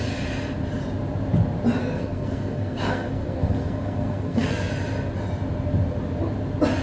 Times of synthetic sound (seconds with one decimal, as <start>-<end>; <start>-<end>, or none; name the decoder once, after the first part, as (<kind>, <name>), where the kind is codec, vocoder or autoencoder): 1.8-4.7 (codec, SNAC)